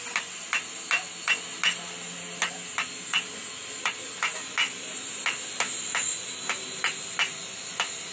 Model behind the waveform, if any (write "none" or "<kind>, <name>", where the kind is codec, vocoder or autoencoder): none